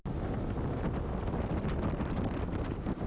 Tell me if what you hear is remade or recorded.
recorded